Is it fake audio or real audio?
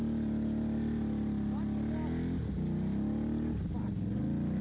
real